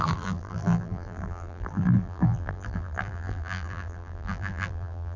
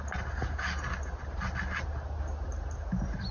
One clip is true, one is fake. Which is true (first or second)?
second